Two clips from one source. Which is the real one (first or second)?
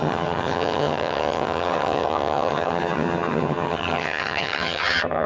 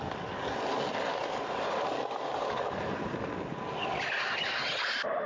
second